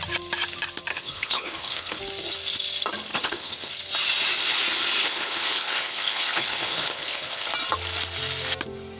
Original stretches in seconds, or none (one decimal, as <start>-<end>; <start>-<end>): 0.0-0.9; 2.0-3.1; 3.7-5.0; 7.5-9.0